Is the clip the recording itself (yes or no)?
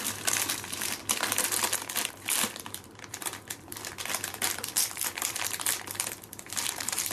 no